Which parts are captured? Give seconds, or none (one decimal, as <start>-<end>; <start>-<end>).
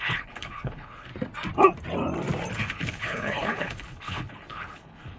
1.1-2.5